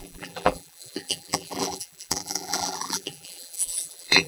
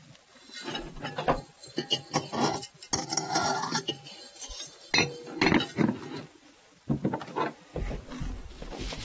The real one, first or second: second